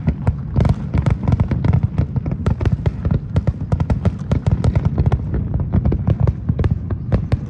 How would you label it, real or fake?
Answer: real